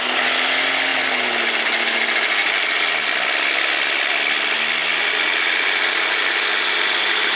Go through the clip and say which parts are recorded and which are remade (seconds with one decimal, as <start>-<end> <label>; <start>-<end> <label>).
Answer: 0.0-7.4 recorded